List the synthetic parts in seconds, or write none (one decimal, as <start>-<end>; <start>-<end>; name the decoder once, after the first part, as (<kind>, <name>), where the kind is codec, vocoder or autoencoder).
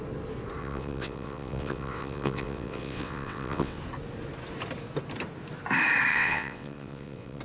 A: 0.6-3.8 (vocoder, WaveNeXt); 6.1-7.4